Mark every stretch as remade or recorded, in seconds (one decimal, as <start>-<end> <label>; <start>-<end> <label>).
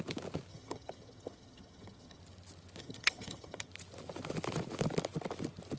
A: 0.0-0.5 recorded; 0.5-2.2 remade; 2.2-2.8 recorded; 2.8-3.7 remade; 3.7-5.8 recorded